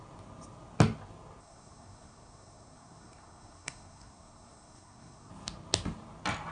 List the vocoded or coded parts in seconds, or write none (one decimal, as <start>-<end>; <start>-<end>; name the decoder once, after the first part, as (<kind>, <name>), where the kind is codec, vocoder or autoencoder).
1.4-5.3 (codec, SNAC)